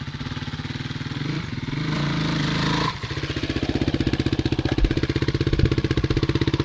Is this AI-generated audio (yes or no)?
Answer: no